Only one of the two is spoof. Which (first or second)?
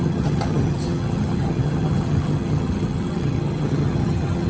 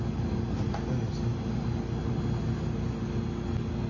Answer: first